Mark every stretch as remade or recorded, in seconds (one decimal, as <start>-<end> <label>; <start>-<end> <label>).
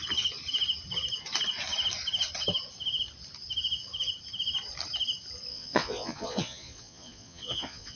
0.0-5.5 recorded; 5.5-8.0 remade